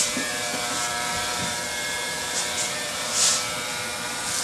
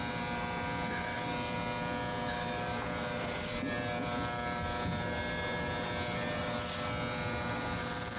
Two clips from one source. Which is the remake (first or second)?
first